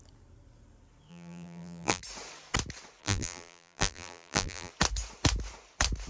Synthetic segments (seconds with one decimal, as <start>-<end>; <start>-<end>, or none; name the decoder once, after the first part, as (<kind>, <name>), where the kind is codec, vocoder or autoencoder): 1.1-2.0 (vocoder, BigVGAN v2); 3.0-4.7